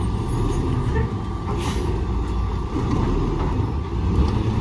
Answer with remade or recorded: recorded